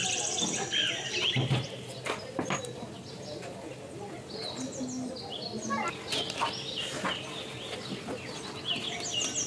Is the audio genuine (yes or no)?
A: yes